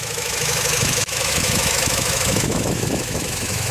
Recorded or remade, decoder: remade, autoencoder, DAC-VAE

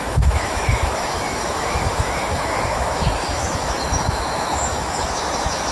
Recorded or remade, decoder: remade, autoencoder, DAC-VAE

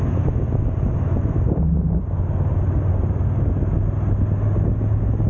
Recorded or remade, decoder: recorded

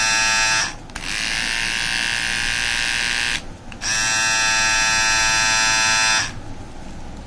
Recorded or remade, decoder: recorded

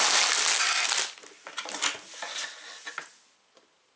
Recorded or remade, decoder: recorded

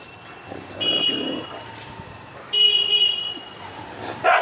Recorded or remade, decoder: recorded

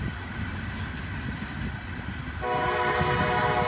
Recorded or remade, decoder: recorded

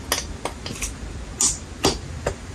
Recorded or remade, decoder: recorded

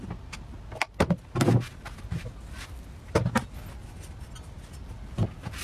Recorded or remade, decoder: recorded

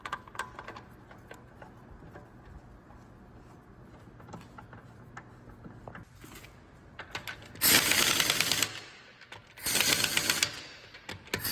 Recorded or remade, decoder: recorded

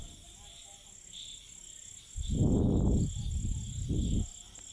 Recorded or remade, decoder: recorded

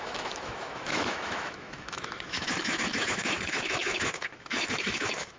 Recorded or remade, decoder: remade, autoencoder, DAC-VAE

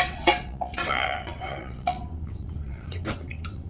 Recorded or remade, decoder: remade, vocoder, WaveNeXt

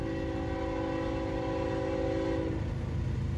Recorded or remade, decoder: recorded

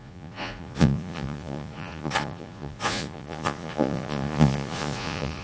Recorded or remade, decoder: remade, vocoder, Vocos